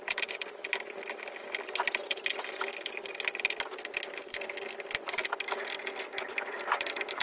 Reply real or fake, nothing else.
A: real